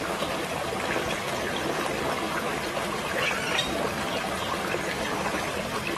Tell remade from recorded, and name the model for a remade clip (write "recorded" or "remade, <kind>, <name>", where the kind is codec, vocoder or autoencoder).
recorded